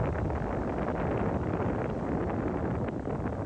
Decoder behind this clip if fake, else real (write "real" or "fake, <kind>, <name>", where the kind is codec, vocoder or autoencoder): real